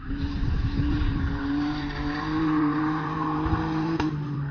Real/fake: fake